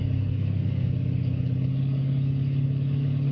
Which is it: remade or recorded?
remade